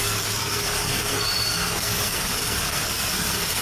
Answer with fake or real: fake